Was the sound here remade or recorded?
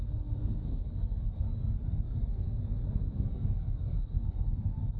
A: remade